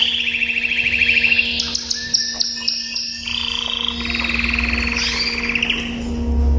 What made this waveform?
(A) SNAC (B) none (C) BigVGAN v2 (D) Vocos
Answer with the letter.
B